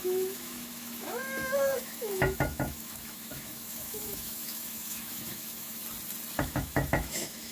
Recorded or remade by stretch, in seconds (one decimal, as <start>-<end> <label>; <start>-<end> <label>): 0.0-5.8 remade; 5.8-6.4 recorded; 6.4-7.5 remade